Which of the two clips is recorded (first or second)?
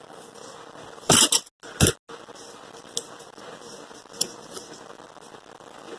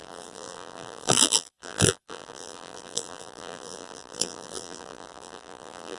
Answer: first